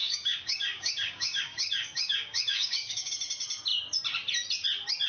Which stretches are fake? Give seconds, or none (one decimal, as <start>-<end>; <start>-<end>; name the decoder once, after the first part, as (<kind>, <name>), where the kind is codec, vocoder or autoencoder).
0.0-3.1 (codec, DAC)